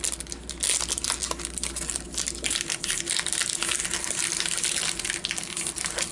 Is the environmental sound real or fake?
real